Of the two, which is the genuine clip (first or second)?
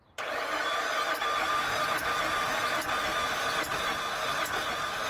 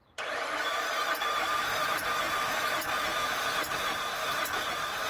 first